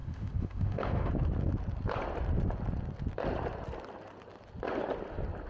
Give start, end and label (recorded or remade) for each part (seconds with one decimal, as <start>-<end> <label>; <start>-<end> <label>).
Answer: 0.0-1.1 remade; 1.1-5.5 recorded